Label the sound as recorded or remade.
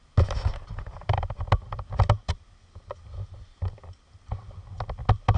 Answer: recorded